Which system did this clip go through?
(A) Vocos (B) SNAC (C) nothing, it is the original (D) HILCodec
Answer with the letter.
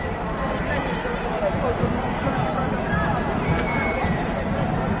C